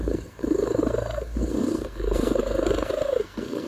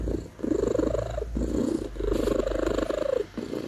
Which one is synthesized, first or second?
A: first